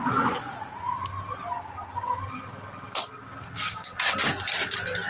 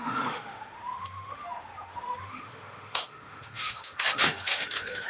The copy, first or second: second